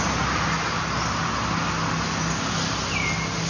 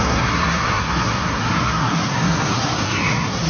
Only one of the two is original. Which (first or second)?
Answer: first